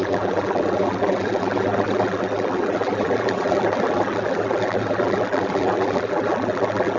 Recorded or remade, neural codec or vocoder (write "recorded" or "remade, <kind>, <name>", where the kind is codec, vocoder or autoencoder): remade, vocoder, BigVGAN v2